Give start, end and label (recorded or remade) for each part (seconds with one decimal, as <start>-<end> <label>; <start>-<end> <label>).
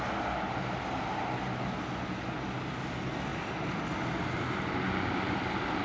0.0-5.8 recorded